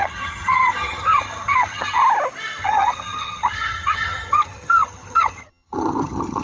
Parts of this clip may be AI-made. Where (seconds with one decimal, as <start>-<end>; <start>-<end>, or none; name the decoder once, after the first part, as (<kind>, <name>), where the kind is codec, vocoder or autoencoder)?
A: 0.0-2.0 (vocoder, HiFi-GAN); 2.6-6.4